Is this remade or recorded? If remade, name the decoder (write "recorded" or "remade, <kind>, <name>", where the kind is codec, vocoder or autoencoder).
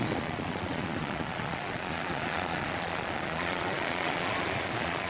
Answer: remade, vocoder, Vocos